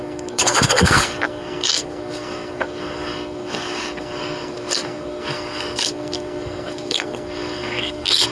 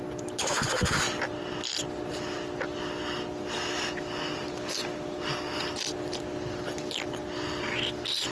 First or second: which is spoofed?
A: first